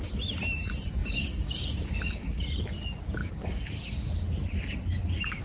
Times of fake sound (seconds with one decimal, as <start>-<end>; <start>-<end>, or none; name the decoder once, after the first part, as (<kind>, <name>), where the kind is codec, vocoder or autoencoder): 1.0-2.4 (codec, DAC); 3.2-3.7